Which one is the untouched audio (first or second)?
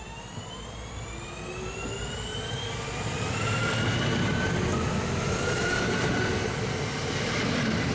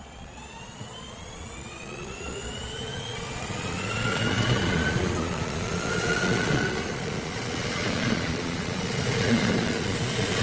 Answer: first